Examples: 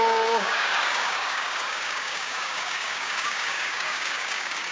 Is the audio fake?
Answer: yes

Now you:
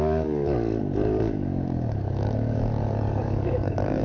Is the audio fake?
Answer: yes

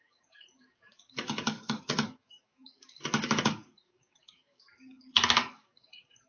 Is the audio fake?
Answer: yes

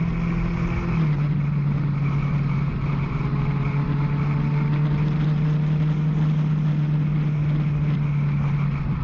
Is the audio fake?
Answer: no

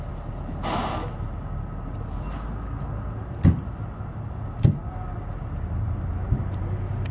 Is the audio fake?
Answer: no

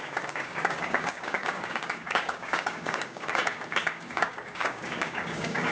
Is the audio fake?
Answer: yes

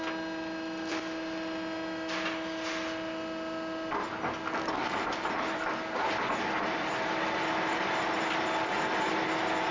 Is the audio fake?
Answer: no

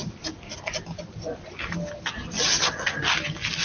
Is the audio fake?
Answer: no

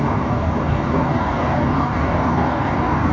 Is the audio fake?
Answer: yes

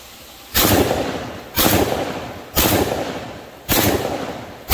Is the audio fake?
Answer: no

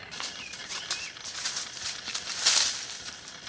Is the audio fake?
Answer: no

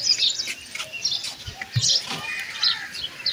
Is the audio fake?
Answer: no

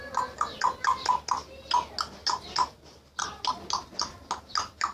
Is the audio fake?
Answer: no